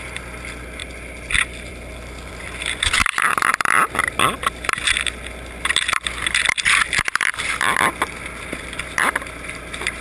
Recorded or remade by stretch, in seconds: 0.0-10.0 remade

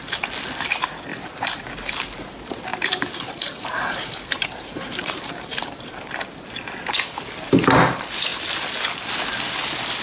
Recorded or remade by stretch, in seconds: 0.0-1.1 recorded; 1.1-1.6 remade; 1.6-2.7 recorded; 2.7-6.5 remade; 6.5-10.0 recorded